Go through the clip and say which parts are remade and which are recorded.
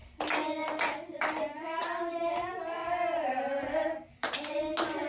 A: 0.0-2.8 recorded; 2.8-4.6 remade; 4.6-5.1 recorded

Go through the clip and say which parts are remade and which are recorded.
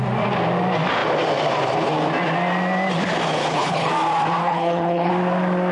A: 0.0-3.4 recorded; 3.4-3.9 remade; 3.9-4.4 recorded; 4.4-5.1 remade; 5.1-5.7 recorded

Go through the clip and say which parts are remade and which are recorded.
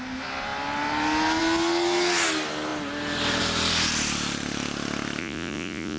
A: 0.0-5.2 recorded; 5.2-6.0 remade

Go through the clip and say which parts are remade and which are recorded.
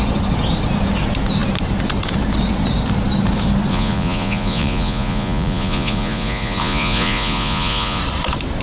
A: 0.0-3.7 recorded; 3.7-8.0 remade; 8.0-8.6 recorded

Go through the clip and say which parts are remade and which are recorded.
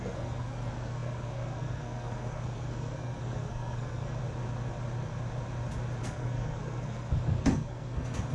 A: 0.0-4.2 remade; 4.2-6.0 recorded; 6.0-8.3 remade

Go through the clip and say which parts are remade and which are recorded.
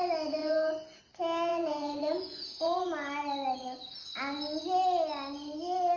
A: 0.0-0.4 recorded; 0.4-1.0 remade; 1.0-1.5 recorded; 1.5-2.9 remade; 2.9-6.0 recorded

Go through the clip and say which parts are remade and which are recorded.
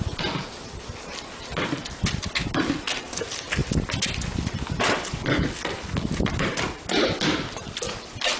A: 0.0-8.4 recorded